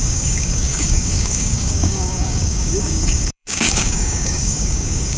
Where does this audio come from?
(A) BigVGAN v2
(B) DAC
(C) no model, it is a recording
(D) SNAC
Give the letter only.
B